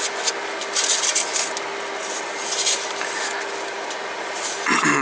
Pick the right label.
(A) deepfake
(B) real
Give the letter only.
B